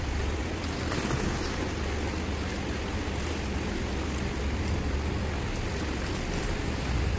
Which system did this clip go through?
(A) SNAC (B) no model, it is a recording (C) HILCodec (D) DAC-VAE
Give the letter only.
B